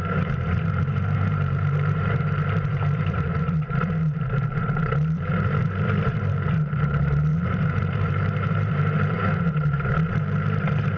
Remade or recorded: remade